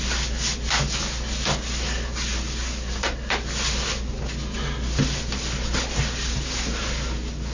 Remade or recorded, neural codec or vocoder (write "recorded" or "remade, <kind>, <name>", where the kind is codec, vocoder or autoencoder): recorded